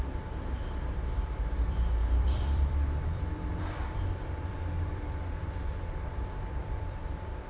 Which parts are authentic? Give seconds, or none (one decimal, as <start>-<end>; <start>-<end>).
5.6-6.5